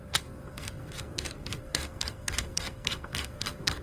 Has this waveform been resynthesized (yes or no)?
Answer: yes